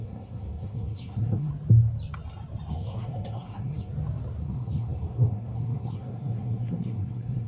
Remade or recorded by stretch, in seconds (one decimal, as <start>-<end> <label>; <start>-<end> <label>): 0.0-1.5 remade; 1.5-2.7 recorded; 2.7-3.9 remade; 3.9-4.4 recorded; 4.4-7.5 remade